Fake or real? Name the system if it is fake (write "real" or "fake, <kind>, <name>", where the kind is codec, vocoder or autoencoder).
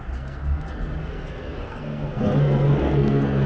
fake, codec, SNAC